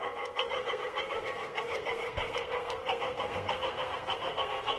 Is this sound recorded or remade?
remade